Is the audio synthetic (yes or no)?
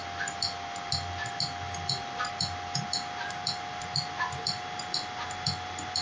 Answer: no